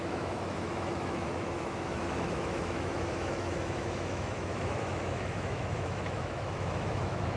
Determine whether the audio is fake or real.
fake